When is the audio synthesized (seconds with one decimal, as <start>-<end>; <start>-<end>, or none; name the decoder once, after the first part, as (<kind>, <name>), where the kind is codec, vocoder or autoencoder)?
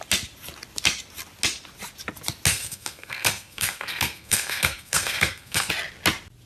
2.5-5.7 (codec, SNAC)